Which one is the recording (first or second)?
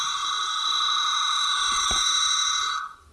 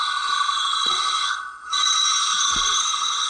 first